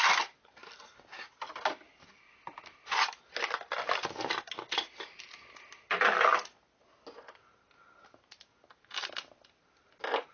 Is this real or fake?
real